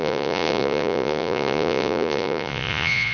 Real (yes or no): no